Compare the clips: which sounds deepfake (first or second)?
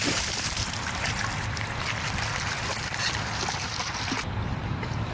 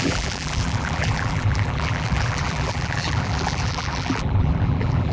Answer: second